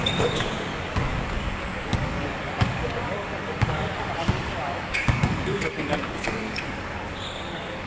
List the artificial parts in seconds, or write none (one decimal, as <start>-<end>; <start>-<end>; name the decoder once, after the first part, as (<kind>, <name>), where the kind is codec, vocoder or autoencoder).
0.0-7.9 (codec, DAC)